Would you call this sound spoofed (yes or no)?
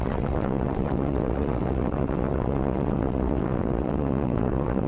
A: yes